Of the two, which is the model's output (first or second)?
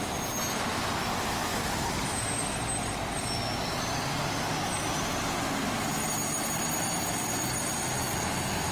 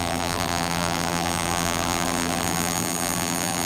second